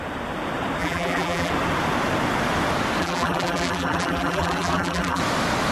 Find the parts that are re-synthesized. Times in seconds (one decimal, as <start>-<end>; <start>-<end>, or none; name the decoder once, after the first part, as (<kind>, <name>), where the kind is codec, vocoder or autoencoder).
0.8-1.5 (vocoder, BigVGAN v2); 3.0-5.2